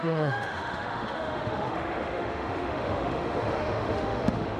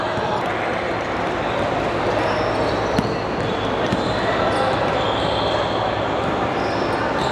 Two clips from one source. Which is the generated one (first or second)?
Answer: first